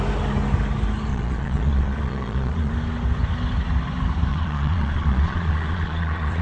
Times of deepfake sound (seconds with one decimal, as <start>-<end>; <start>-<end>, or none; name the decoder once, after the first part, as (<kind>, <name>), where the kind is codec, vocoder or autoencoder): 1.1-2.7 (vocoder, Vocos); 4.3-6.4